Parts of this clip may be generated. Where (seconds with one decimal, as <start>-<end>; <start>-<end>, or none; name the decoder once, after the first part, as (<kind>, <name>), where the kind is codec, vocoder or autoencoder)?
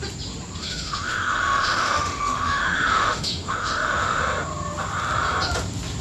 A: 0.6-4.2 (autoencoder, DAC-VAE)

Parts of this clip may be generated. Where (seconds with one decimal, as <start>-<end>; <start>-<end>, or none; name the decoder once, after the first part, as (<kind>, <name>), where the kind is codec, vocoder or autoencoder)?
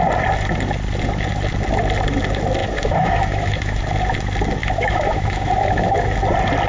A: 2.6-3.8 (autoencoder, DAC-VAE); 4.6-6.2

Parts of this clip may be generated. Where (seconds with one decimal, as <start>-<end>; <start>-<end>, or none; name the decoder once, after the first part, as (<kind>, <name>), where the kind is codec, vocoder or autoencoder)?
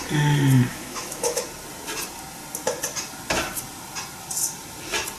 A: 0.7-1.4 (autoencoder, DAC-VAE)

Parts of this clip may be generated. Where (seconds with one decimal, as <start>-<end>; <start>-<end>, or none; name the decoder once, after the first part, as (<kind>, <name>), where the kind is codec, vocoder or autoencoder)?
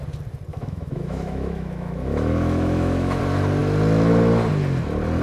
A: 0.5-3.2 (autoencoder, DAC-VAE)